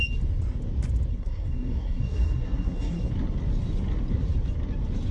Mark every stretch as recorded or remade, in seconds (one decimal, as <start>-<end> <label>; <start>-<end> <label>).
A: 0.0-1.1 recorded; 1.1-3.1 remade; 3.1-5.1 recorded